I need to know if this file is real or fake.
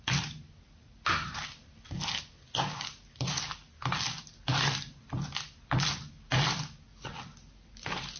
real